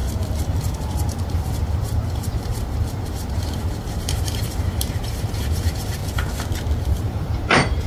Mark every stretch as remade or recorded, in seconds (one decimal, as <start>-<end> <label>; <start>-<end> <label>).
0.0-0.6 recorded; 0.6-6.0 remade; 6.0-7.0 recorded; 7.0-7.9 remade